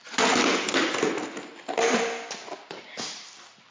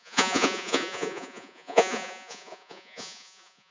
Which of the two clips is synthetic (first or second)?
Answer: second